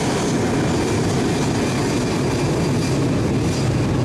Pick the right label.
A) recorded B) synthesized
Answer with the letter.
A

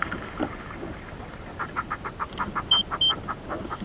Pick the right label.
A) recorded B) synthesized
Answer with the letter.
A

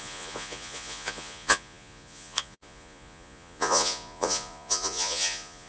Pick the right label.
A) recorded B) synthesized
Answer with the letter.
B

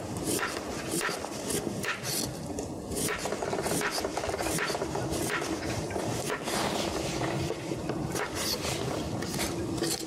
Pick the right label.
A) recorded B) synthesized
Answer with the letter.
B